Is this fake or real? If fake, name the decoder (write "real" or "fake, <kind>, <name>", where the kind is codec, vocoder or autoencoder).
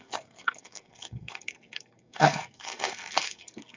fake, codec, SNAC